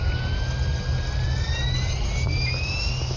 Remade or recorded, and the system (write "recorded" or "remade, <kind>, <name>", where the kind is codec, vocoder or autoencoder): recorded